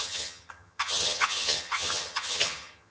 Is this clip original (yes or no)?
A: no